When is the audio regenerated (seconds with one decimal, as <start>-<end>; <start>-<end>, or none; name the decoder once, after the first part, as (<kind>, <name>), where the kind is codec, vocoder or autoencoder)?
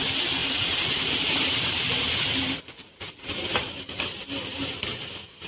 0.4-3.7 (vocoder, BigVGAN v2)